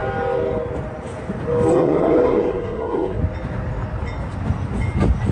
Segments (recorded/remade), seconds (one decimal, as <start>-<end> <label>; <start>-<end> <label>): 0.0-1.7 recorded; 1.7-3.2 remade; 3.2-5.3 recorded